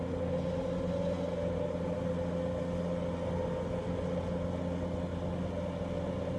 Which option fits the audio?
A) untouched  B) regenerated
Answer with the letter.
A